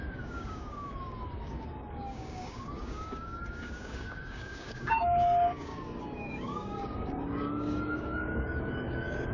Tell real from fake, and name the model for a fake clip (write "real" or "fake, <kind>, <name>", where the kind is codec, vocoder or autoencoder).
fake, codec, DAC